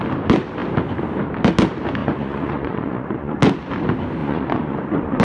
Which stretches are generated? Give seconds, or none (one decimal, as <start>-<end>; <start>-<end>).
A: 2.0-3.4; 4.2-5.2